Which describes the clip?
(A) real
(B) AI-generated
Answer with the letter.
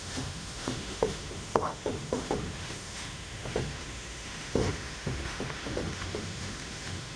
B